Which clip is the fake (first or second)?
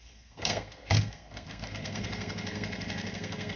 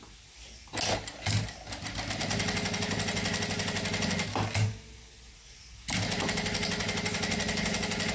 first